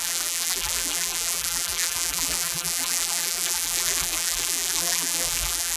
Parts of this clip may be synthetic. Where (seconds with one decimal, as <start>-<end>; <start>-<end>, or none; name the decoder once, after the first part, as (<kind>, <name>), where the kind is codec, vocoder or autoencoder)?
0.0-5.8 (vocoder, BigVGAN v2)